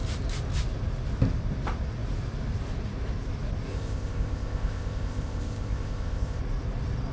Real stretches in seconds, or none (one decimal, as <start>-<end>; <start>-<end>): 0.0-3.7; 6.4-7.1

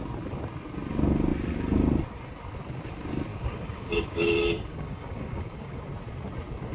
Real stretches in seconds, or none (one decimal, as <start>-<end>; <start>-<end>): 0.0-3.3; 5.8-6.7

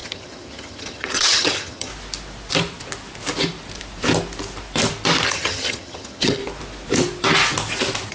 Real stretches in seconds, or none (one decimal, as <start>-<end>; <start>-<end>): 1.9-5.3; 6.4-8.1

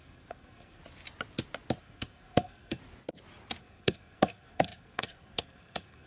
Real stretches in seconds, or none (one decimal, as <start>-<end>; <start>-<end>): 0.8-1.8; 2.8-3.6

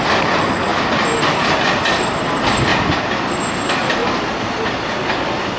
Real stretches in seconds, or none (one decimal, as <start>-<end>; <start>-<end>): 0.7-1.7; 2.7-3.2; 4.0-5.6

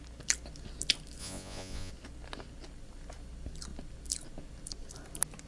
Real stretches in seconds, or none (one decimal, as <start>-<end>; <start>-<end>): 0.0-1.2; 1.9-5.5